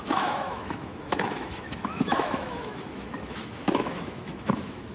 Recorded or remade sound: remade